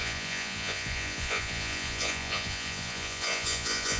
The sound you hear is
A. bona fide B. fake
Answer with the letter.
B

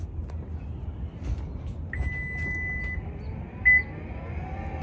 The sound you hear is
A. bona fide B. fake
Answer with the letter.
A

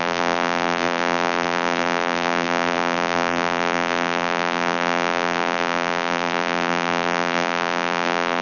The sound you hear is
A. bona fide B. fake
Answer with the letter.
B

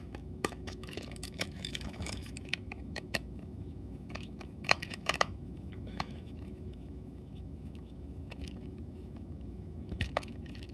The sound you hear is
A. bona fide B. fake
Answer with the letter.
B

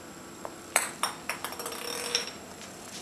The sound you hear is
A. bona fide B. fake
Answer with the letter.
B